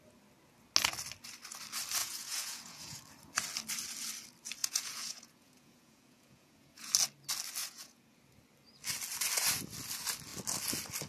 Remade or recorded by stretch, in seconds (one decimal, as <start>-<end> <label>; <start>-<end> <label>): 0.0-2.0 recorded; 2.0-3.0 remade; 3.0-4.6 recorded; 4.6-6.9 remade; 6.9-7.6 recorded; 7.6-8.2 remade; 8.2-11.1 recorded